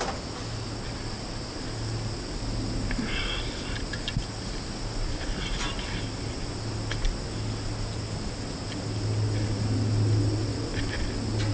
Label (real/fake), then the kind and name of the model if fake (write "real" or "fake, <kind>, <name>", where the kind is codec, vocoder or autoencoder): real